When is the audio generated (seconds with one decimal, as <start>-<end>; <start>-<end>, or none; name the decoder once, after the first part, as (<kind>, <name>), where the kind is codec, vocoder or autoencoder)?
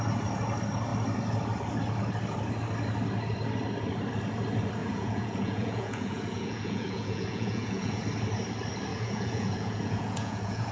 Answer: 4.8-8.0 (vocoder, Vocos); 8.9-10.7